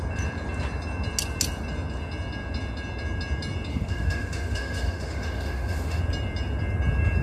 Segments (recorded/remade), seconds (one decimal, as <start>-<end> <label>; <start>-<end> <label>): 0.0-3.7 recorded; 3.7-6.0 remade; 6.0-7.2 recorded